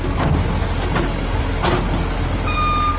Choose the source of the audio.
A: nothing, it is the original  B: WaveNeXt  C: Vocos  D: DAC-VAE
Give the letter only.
A